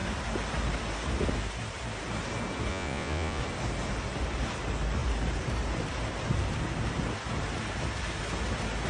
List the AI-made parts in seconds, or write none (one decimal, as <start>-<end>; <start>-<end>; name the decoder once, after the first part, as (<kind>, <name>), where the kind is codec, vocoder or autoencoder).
2.7-3.4 (vocoder, Vocos)